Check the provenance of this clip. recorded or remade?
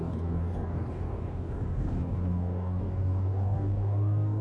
remade